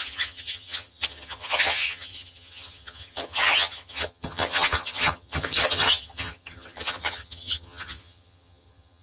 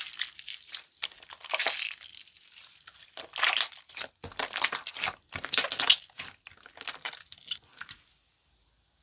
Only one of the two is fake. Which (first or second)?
first